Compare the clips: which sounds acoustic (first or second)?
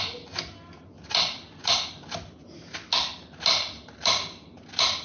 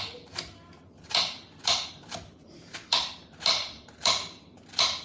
first